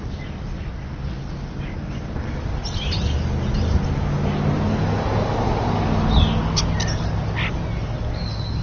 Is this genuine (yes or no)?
yes